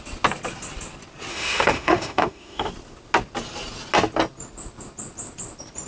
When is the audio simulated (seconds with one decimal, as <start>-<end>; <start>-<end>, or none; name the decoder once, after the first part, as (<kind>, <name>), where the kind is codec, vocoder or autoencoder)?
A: 1.3-2.7 (autoencoder, DAC-VAE)